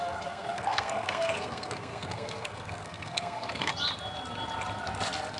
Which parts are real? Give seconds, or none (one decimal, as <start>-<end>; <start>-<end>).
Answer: 3.7-5.4